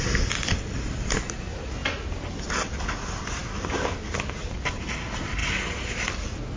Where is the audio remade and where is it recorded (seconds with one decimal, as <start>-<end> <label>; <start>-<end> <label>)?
0.0-6.6 recorded